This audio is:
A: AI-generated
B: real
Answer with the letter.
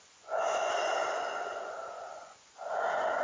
A